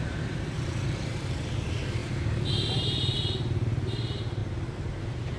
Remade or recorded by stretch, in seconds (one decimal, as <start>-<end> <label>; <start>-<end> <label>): 0.0-2.0 remade; 2.0-2.7 recorded; 2.7-4.4 remade; 4.4-5.0 recorded; 5.0-5.4 remade